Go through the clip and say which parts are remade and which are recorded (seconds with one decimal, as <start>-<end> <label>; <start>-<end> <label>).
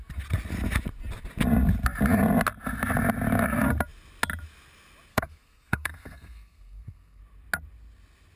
0.0-5.1 recorded; 5.1-7.2 remade; 7.2-8.4 recorded